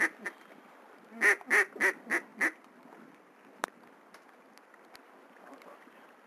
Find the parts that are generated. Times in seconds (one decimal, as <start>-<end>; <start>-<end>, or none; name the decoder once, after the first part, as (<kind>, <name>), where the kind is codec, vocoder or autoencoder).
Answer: none